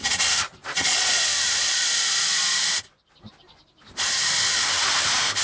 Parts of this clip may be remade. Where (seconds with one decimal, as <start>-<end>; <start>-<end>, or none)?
0.6-1.2